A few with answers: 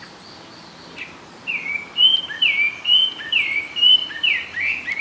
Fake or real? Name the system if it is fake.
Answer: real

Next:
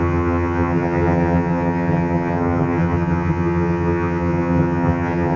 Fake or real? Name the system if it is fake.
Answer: fake, vocoder, HiFi-GAN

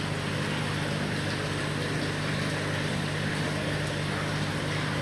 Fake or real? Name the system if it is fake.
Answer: real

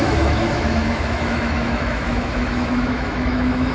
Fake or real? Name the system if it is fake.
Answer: fake, autoencoder, DAC-VAE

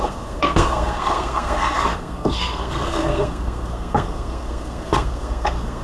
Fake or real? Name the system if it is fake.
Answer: fake, codec, SNAC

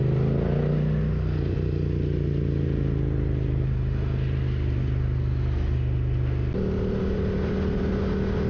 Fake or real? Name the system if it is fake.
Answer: real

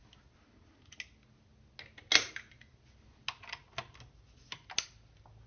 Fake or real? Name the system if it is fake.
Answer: real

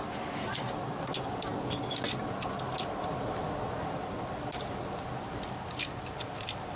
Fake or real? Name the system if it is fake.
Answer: real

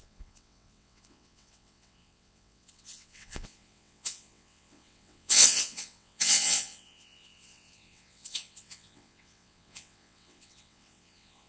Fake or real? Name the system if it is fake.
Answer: fake, vocoder, WaveNeXt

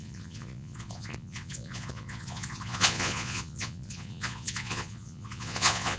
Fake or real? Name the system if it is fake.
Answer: fake, vocoder, Vocos